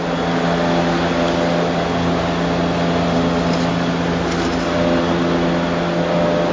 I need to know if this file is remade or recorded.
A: recorded